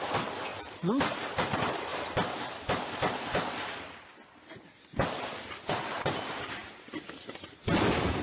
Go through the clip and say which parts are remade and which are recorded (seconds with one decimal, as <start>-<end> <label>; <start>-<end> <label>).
0.0-0.5 remade; 0.5-1.1 recorded; 1.1-1.9 remade; 1.9-5.7 recorded; 5.7-8.2 remade